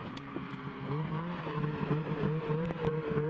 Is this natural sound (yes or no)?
no